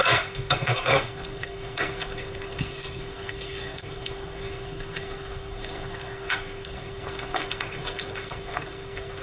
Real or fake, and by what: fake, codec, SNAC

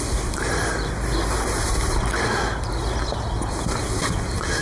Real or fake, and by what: real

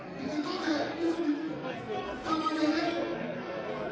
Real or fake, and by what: fake, codec, SNAC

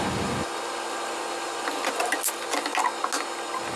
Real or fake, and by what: real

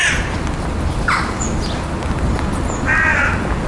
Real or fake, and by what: real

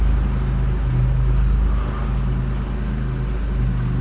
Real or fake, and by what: real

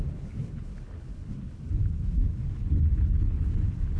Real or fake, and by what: fake, codec, HILCodec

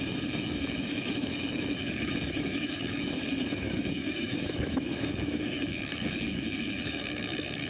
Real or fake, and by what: fake, autoencoder, DAC-VAE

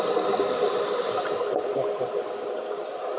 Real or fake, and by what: real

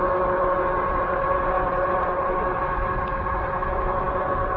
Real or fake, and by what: real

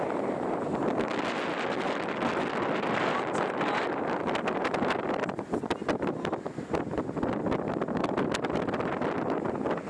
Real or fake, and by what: real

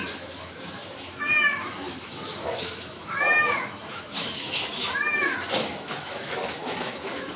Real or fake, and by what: fake, autoencoder, DAC-VAE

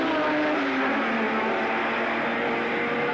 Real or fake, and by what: real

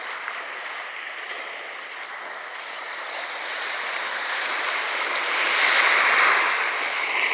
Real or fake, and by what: real